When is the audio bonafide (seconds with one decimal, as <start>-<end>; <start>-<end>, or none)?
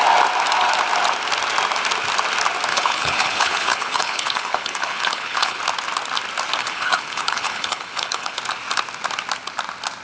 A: 0.0-2.7; 5.6-6.6; 8.4-10.0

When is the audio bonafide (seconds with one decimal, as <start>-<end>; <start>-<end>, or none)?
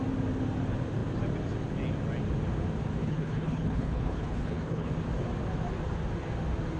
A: 0.0-3.0; 4.9-6.8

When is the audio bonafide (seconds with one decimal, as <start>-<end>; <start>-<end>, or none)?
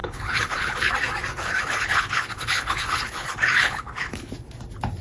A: 0.9-1.3; 4.3-5.0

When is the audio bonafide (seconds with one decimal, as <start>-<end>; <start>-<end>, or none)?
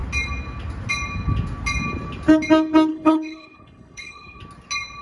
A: 0.0-2.9; 4.4-5.0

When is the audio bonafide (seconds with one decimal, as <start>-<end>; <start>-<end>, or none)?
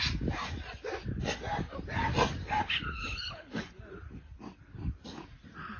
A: 0.0-2.6; 3.8-5.8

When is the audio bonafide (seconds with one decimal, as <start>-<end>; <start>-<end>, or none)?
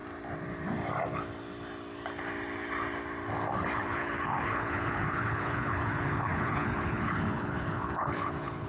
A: 0.0-3.8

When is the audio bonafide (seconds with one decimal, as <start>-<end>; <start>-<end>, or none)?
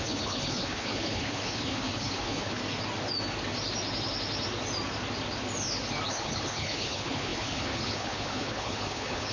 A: 2.6-6.1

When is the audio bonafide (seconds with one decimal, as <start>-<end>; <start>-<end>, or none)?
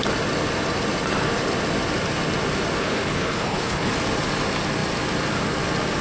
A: 0.0-2.8; 3.9-6.0